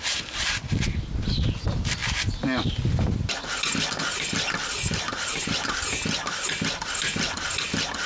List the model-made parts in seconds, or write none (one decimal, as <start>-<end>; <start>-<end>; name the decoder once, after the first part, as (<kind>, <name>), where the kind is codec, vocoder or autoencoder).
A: none